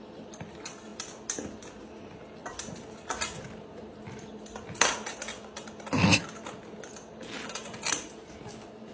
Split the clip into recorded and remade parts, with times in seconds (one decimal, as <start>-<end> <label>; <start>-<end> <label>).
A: 0.0-8.9 recorded

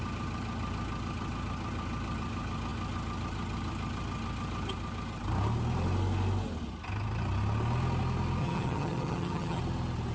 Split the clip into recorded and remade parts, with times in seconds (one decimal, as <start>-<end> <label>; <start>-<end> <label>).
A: 0.0-8.4 recorded; 8.4-9.6 remade; 9.6-10.1 recorded

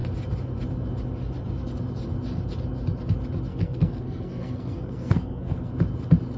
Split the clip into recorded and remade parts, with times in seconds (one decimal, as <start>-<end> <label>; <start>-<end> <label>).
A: 0.0-3.5 recorded; 3.5-5.7 remade; 5.7-6.4 recorded

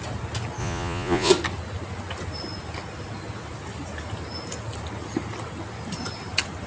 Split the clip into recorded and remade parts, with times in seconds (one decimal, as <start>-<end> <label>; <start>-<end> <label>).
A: 0.0-0.6 recorded; 0.6-1.3 remade; 1.3-6.7 recorded

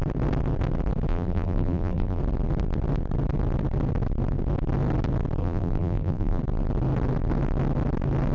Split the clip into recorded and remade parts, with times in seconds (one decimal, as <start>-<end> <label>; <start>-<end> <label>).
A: 0.0-1.1 recorded; 1.1-2.2 remade; 2.2-5.4 recorded; 5.4-6.4 remade; 6.4-8.3 recorded

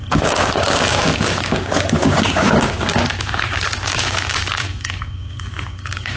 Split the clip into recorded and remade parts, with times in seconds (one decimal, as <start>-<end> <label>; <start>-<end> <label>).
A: 0.0-6.2 remade